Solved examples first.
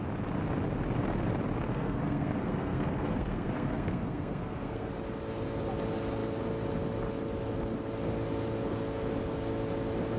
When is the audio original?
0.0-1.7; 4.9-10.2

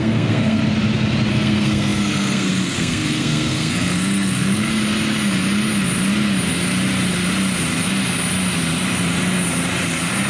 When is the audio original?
0.6-1.3; 4.7-10.3

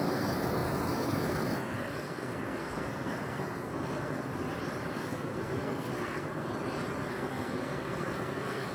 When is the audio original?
4.3-4.9; 6.5-7.1

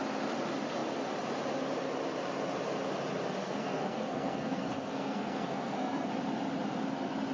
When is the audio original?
0.0-3.4; 6.1-7.3

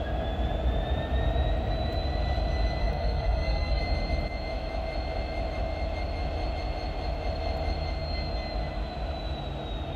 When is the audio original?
0.0-2.8; 3.8-10.0

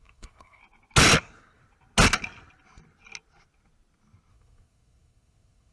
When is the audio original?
0.6-1.2; 1.6-4.3

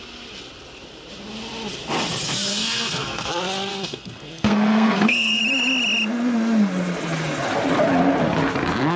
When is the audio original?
0.0-2.5; 3.3-3.7; 5.4-9.0